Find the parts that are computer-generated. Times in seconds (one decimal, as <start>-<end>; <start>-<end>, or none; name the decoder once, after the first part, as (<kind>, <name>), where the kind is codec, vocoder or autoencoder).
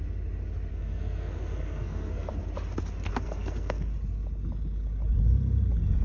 0.7-2.3 (codec, SNAC); 3.1-3.9